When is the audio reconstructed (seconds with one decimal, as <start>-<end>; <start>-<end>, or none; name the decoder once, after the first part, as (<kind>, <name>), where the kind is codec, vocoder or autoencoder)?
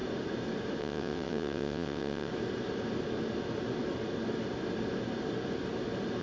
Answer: 0.8-2.3 (vocoder, WaveNeXt)